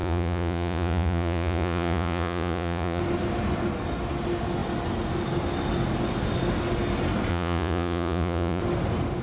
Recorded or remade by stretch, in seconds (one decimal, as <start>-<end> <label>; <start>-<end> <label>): 0.0-3.0 remade; 3.0-7.3 recorded; 7.3-8.6 remade; 8.6-9.2 recorded